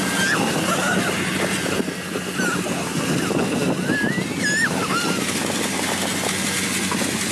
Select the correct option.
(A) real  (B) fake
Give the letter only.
A